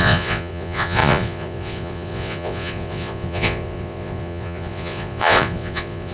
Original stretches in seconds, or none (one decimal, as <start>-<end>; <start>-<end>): none